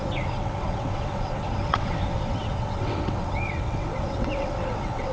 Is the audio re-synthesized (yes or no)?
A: yes